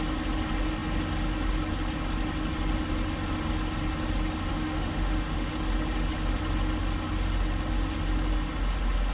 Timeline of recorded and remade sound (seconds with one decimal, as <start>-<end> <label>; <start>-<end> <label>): 0.0-4.5 recorded; 4.5-5.5 remade; 5.5-9.1 recorded